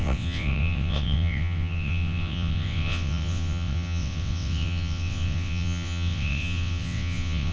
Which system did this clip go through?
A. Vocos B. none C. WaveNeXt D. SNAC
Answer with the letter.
C